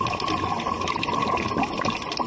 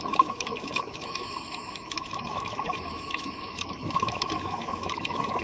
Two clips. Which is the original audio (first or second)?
first